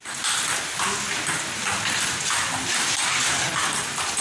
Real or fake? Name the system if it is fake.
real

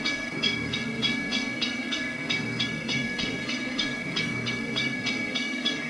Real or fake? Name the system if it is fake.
fake, codec, SNAC